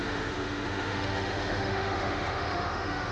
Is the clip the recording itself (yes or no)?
no